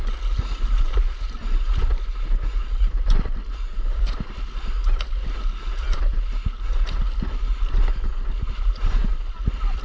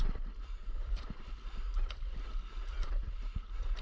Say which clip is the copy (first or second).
second